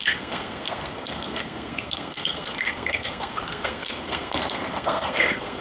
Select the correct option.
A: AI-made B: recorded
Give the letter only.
A